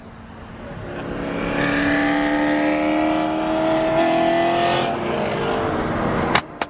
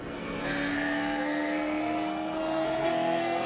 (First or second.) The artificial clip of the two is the second